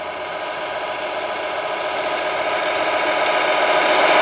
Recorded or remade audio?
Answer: recorded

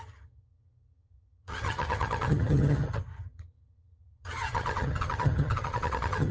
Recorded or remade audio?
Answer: remade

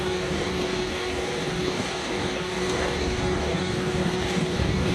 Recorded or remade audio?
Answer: remade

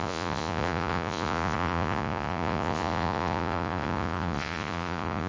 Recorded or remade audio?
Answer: remade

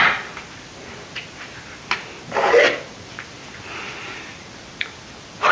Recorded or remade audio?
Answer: recorded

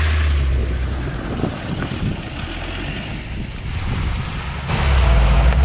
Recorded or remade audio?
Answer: recorded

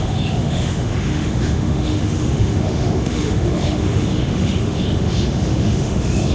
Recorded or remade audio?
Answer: remade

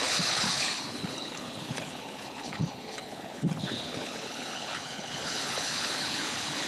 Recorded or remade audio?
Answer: remade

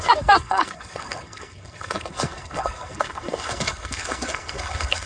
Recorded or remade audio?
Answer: remade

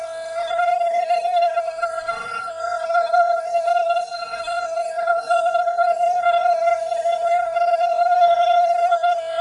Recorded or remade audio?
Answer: remade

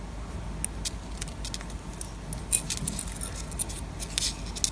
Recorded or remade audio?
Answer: recorded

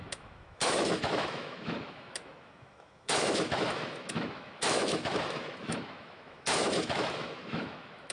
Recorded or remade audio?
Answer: remade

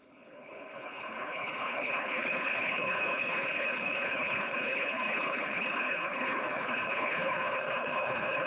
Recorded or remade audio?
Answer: remade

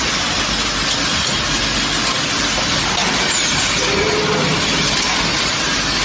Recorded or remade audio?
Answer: recorded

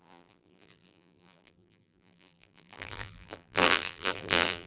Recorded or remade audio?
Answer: remade